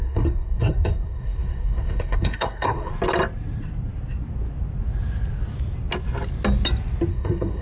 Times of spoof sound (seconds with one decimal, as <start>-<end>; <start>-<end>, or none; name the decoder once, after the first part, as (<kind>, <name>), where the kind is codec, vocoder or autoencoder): 0.0-2.9 (codec, SNAC); 7.1-7.6